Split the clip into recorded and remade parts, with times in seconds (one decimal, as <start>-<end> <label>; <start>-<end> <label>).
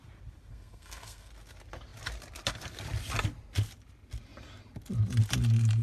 0.0-0.5 recorded; 0.5-1.3 remade; 1.3-5.8 recorded